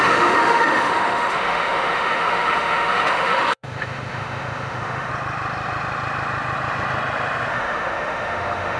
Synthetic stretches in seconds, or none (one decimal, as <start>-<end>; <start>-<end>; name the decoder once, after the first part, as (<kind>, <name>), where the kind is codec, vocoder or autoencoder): 0.0-5.1 (autoencoder, DAC-VAE); 7.5-8.8